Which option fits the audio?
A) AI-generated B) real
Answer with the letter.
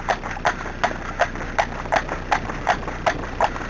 B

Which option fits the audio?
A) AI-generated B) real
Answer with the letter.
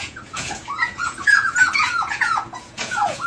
A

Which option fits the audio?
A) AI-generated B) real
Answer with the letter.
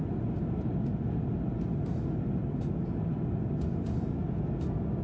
B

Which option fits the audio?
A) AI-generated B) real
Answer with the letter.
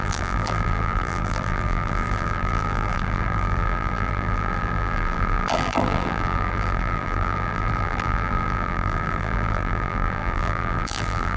A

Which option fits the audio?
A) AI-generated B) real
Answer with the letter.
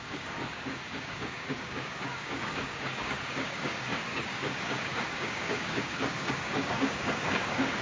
A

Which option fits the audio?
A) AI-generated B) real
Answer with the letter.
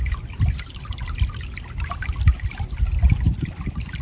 B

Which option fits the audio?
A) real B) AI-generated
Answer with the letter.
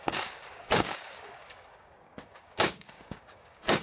B